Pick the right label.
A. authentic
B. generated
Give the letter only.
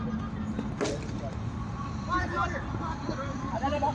A